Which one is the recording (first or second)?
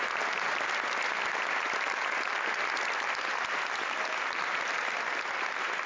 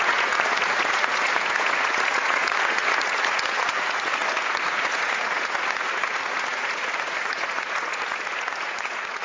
first